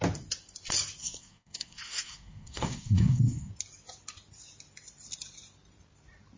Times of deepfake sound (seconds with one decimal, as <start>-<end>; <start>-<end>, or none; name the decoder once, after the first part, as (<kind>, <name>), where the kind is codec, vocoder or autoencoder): 1.0-3.5 (codec, SNAC)